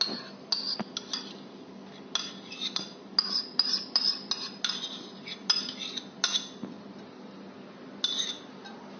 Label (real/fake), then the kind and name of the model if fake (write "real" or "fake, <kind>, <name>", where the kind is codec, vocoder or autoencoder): real